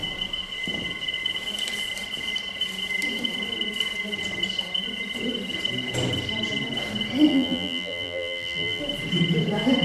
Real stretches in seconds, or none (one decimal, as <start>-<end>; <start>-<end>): 0.0-7.3; 8.8-9.8

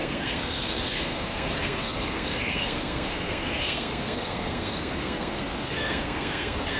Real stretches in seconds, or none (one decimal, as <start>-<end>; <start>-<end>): none